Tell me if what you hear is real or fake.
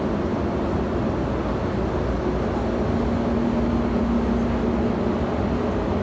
real